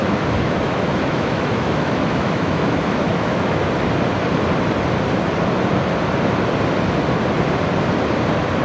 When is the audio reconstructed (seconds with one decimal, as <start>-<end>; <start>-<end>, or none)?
0.0-3.6